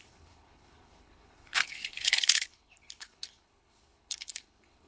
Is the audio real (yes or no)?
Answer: no